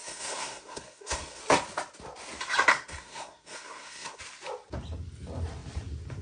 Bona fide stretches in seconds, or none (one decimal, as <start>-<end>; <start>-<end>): 1.4-2.7; 4.2-6.2